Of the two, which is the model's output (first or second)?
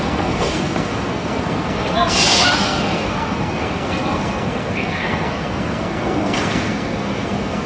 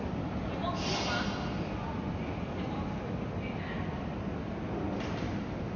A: first